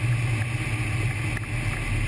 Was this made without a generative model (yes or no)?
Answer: yes